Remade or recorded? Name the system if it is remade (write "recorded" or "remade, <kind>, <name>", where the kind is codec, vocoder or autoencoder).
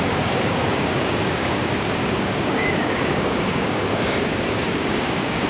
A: remade, codec, DAC